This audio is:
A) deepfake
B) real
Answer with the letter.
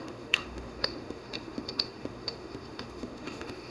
A